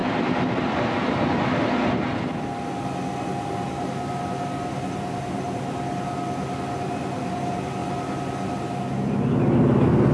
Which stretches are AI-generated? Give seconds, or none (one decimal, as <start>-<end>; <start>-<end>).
none